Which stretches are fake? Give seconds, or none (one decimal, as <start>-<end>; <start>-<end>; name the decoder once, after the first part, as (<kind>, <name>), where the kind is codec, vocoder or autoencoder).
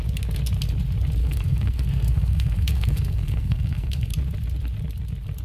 1.2-4.1 (codec, SNAC)